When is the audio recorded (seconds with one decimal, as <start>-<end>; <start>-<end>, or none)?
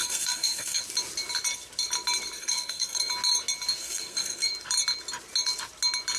0.8-2.4; 3.1-3.8; 4.5-6.2